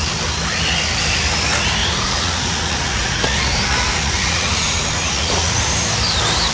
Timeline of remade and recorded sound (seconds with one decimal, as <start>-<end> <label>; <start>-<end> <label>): 0.0-1.8 recorded; 1.8-5.6 remade; 5.6-6.5 recorded